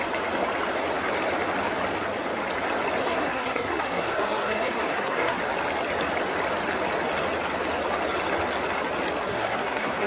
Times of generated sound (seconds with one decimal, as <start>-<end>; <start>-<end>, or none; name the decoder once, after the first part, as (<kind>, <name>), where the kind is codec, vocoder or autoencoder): 3.0-5.4 (codec, SNAC); 9.3-10.1